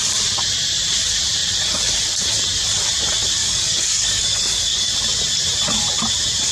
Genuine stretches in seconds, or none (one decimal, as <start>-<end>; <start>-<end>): 0.0-3.4; 4.9-6.5